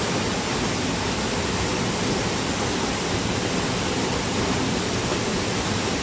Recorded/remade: recorded